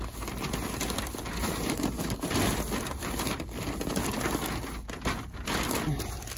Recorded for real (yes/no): no